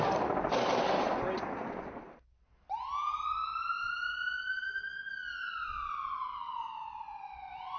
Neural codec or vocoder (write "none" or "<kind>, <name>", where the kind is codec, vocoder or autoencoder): none